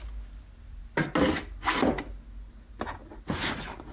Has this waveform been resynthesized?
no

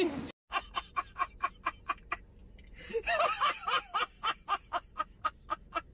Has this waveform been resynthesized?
no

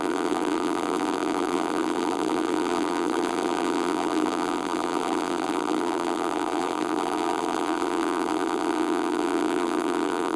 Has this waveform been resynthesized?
yes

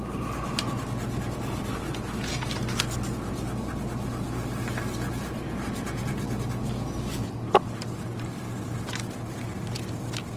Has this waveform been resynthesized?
no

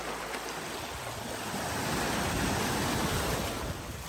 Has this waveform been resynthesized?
yes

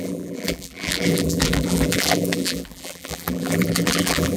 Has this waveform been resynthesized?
yes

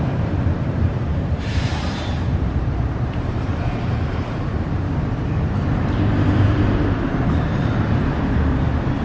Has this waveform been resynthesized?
yes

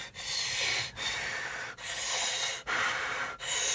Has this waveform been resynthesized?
no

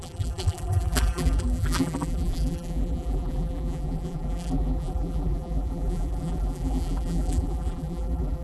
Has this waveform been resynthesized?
yes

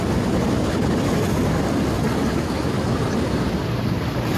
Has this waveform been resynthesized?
no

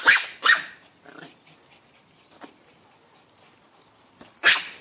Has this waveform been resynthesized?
yes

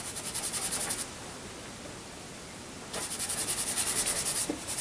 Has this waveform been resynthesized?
yes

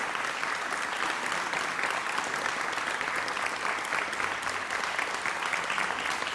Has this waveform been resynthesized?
no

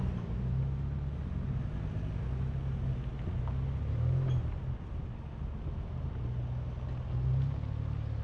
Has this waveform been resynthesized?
no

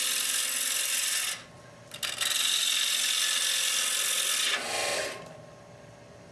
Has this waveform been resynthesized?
no